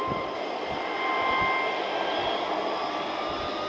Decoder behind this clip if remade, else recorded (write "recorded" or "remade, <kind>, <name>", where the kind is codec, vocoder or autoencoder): recorded